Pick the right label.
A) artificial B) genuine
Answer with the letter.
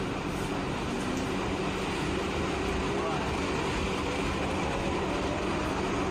B